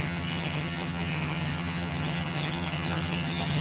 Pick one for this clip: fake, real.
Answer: fake